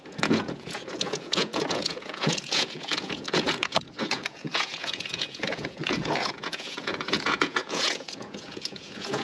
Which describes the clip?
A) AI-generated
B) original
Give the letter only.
A